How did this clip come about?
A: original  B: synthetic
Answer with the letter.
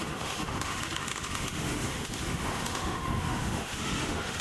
B